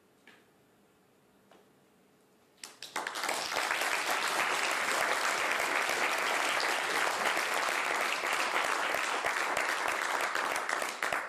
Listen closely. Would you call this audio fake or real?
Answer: real